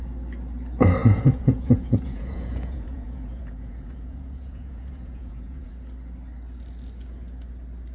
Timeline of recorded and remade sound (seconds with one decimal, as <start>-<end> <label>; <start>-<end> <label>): 0.0-1.0 recorded; 1.0-5.7 remade; 5.7-7.9 recorded